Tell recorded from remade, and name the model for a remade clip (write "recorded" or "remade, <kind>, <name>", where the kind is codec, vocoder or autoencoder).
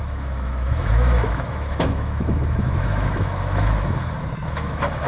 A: remade, autoencoder, DAC-VAE